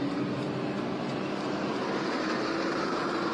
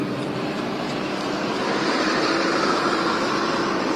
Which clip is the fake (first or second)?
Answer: second